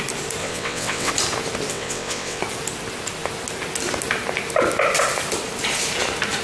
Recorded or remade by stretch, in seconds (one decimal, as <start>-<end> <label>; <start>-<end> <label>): 0.0-0.4 recorded; 0.4-1.1 remade; 1.1-1.7 recorded; 1.7-2.4 remade; 2.4-6.4 recorded